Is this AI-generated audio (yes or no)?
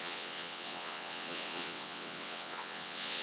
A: yes